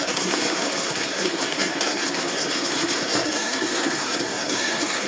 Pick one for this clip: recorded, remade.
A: remade